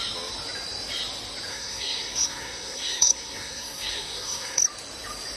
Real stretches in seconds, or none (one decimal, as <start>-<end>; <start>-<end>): 0.0-1.5; 4.6-5.4